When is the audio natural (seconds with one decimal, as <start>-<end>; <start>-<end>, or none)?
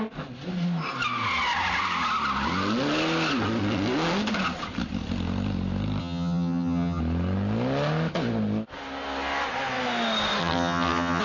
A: 0.0-6.0; 7.0-10.4